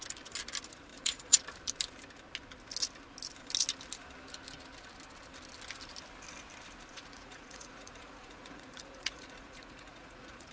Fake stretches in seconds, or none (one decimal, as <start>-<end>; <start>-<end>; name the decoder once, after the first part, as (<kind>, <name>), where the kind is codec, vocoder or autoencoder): 0.9-1.4 (vocoder, Vocos); 6.9-10.5